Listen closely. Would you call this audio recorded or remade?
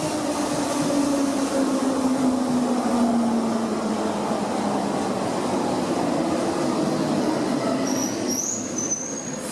recorded